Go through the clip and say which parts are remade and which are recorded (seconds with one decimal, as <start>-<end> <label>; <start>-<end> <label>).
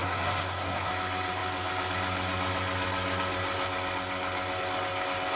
0.0-0.9 remade; 0.9-5.4 recorded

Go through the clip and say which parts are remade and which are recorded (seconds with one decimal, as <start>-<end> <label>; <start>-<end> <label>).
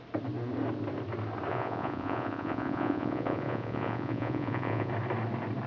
0.0-1.5 recorded; 1.5-4.9 remade; 4.9-5.7 recorded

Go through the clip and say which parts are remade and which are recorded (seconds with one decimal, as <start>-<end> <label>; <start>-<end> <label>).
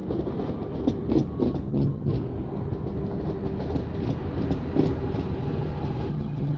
0.0-1.7 recorded; 1.7-2.1 remade; 2.1-6.1 recorded; 6.1-6.6 remade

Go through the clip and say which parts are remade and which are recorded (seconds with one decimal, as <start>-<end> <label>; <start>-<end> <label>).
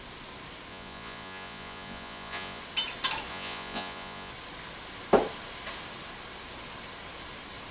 0.0-0.7 recorded; 0.7-2.6 remade; 2.6-3.3 recorded; 3.3-4.3 remade; 4.3-7.7 recorded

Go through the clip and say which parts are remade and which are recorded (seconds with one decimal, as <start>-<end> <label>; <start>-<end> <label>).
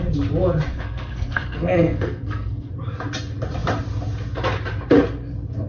0.0-0.7 recorded; 0.7-2.7 remade; 2.7-5.7 recorded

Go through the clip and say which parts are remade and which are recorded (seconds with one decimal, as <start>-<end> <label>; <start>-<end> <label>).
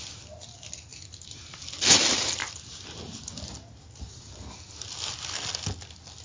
0.0-6.2 recorded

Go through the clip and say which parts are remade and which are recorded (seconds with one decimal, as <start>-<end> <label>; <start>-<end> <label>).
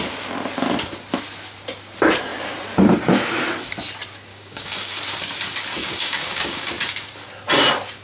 0.0-4.3 recorded; 4.3-5.0 remade; 5.0-5.7 recorded; 5.7-6.7 remade; 6.7-8.0 recorded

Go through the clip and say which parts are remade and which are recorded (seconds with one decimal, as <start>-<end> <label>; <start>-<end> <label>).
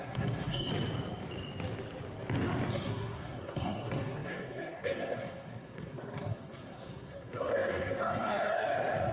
0.0-0.7 remade; 0.7-2.7 recorded; 2.7-9.1 remade